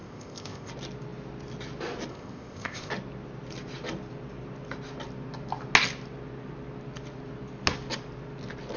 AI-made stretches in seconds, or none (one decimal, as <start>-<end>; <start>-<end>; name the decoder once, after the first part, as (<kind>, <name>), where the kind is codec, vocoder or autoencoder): 0.0-0.7 (codec, ZipCodec); 2.1-2.9